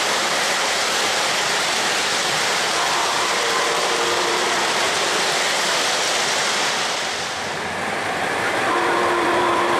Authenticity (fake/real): fake